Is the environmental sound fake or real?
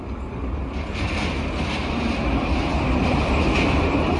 real